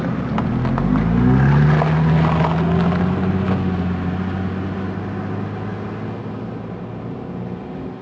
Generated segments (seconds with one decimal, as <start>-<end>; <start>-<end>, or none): none